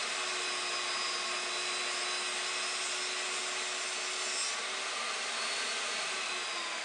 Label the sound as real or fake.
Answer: real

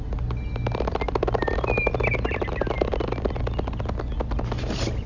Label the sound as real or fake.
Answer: real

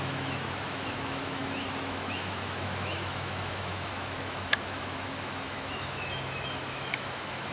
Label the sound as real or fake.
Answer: fake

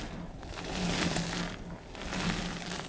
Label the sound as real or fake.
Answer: real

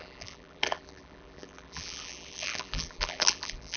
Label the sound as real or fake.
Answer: fake